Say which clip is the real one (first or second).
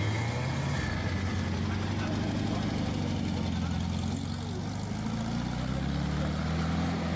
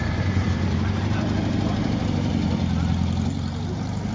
first